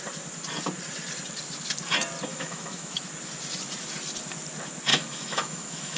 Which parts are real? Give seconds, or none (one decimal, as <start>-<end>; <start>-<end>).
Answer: 0.0-2.3; 3.1-4.9